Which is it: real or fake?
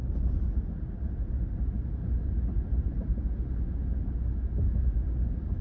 real